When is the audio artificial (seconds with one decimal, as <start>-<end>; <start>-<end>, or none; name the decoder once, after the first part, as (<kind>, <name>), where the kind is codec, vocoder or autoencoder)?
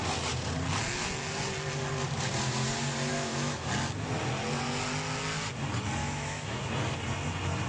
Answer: 3.1-3.7 (autoencoder, DAC-VAE); 6.0-6.7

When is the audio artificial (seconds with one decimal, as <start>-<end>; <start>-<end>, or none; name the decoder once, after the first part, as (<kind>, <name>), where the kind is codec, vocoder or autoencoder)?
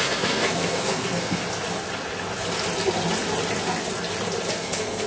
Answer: 0.0-1.4 (codec, SNAC); 4.5-5.1